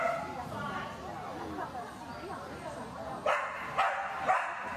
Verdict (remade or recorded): recorded